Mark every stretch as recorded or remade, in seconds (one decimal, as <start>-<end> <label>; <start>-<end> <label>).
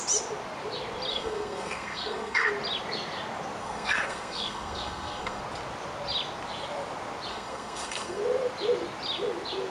0.0-1.1 recorded; 1.1-2.5 remade; 2.5-3.6 recorded; 3.6-5.4 remade; 5.4-7.3 recorded; 7.3-8.2 remade; 8.2-9.7 recorded